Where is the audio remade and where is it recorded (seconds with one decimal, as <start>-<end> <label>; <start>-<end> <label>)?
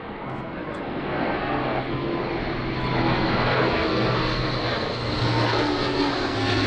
0.0-2.1 remade; 2.1-3.0 recorded; 3.0-6.7 remade